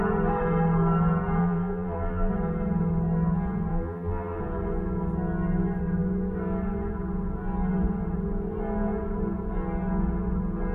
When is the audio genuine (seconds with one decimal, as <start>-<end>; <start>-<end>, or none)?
0.0-1.4; 2.3-3.7; 4.4-10.7